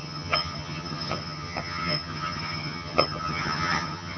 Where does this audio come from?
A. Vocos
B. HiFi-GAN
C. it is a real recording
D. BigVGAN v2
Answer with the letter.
B